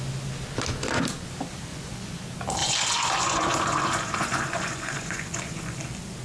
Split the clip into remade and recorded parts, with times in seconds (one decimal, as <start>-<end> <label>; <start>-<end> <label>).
0.0-1.7 recorded; 1.7-2.2 remade; 2.2-2.6 recorded; 2.6-5.8 remade; 5.8-6.2 recorded